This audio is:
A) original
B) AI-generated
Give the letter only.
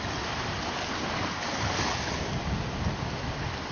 A